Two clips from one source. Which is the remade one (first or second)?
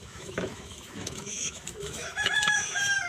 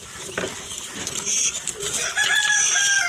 first